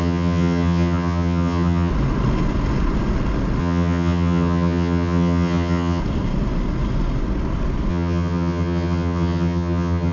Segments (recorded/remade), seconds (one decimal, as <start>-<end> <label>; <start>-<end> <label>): 0.0-1.9 remade; 1.9-3.6 recorded; 3.6-6.0 remade; 6.0-7.9 recorded; 7.9-10.1 remade